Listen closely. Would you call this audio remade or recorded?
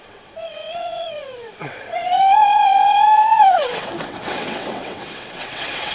remade